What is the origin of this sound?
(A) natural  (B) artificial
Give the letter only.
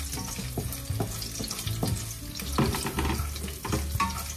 A